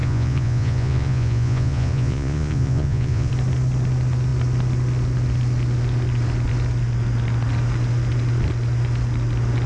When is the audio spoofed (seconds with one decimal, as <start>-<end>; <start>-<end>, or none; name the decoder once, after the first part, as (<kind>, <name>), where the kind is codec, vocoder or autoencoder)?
0.0-3.3 (vocoder, Vocos)